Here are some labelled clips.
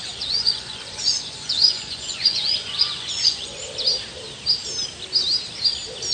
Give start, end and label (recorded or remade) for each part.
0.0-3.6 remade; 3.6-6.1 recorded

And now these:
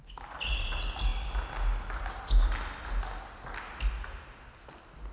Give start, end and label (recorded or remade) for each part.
0.0-5.1 recorded

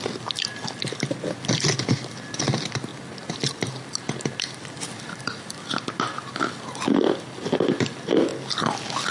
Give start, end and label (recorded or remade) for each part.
0.0-9.1 recorded

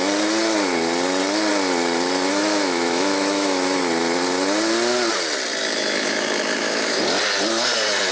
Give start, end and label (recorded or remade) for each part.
0.0-2.3 recorded; 2.3-3.8 remade; 3.8-5.6 recorded; 5.6-7.0 remade; 7.0-8.1 recorded

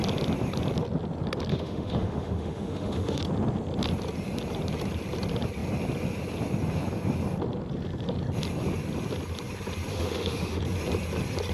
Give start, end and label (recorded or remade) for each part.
0.0-1.5 recorded; 1.5-3.2 remade; 3.2-9.9 recorded; 9.9-10.6 remade; 10.6-11.5 recorded